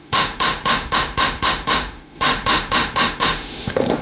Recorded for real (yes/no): no